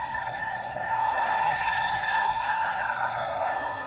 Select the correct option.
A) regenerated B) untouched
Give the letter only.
A